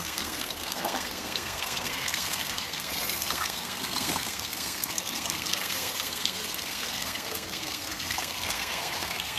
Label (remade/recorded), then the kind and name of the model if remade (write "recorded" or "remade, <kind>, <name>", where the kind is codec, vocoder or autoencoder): remade, codec, SNAC